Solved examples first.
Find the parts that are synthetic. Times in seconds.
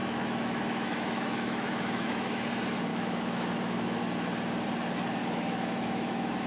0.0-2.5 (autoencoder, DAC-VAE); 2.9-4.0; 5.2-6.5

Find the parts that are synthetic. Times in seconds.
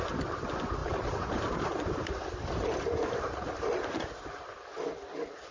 0.8-4.1 (vocoder, BigVGAN v2)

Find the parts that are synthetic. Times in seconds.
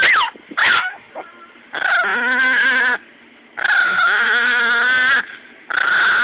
0.6-1.1 (autoencoder, DAC-VAE); 3.8-4.6